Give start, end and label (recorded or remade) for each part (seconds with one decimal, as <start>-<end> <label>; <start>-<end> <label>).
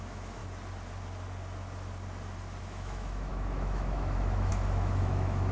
0.0-0.4 remade; 0.4-2.6 recorded; 2.6-5.5 remade